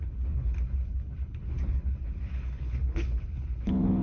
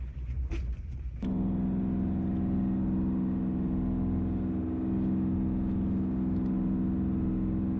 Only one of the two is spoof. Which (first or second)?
first